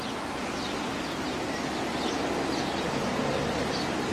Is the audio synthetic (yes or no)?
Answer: no